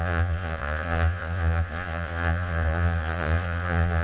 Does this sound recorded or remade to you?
remade